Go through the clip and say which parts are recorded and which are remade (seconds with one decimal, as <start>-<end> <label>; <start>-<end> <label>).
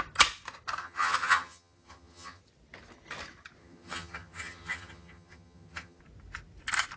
0.0-0.8 recorded; 0.8-2.4 remade; 2.4-3.6 recorded; 3.6-6.0 remade; 6.0-7.0 recorded